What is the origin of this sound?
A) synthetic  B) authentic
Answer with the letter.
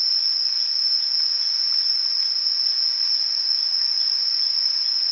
B